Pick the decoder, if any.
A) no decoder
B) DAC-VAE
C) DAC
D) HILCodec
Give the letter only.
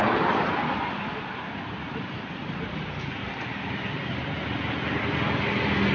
A